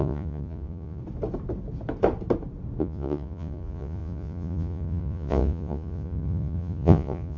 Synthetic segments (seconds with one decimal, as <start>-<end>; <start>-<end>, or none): 0.0-1.0; 2.8-7.4